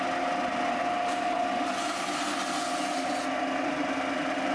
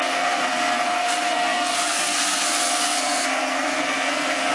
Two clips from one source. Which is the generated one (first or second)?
second